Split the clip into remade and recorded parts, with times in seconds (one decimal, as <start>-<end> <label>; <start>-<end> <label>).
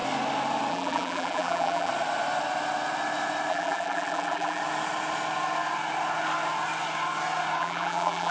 0.0-0.7 recorded; 0.7-1.9 remade; 1.9-3.5 recorded; 3.5-4.6 remade; 4.6-7.6 recorded; 7.6-8.3 remade